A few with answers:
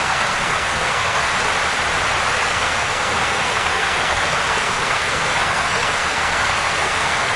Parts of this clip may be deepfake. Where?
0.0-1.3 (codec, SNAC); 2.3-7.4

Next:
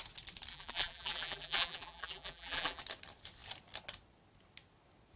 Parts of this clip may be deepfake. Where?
0.5-2.8 (vocoder, BigVGAN v2)

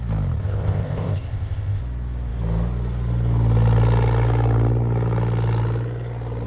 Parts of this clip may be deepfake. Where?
0.4-1.8 (codec, ZipCodec)

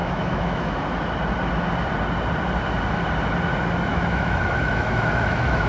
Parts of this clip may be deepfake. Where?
0.0-0.8 (autoencoder, DAC-VAE); 3.9-5.7

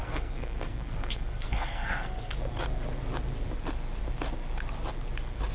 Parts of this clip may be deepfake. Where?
0.0-2.3 (codec, SNAC)